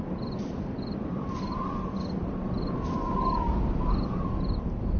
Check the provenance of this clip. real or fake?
real